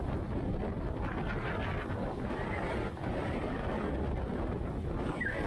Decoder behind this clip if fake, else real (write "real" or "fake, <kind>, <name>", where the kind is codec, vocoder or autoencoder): real